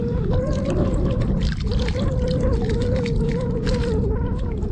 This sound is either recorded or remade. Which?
recorded